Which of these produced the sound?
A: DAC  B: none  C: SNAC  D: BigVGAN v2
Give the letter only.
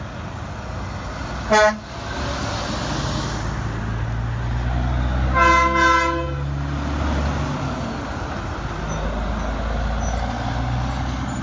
B